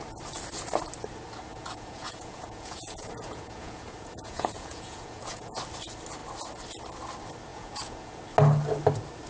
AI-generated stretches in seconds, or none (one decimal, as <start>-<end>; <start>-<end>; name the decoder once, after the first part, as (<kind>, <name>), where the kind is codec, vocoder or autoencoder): 1.5-5.6 (vocoder, Vocos); 7.5-8.2